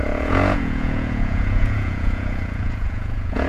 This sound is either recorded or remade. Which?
remade